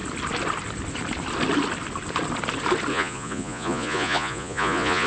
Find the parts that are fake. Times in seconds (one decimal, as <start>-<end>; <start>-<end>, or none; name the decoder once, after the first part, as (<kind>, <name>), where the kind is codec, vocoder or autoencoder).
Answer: 2.9-5.1 (vocoder, Vocos)